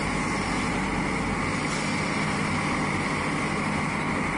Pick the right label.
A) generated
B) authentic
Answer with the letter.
B